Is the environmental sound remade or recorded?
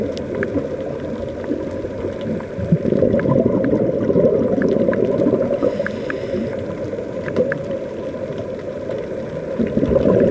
recorded